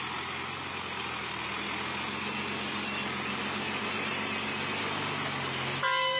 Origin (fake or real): real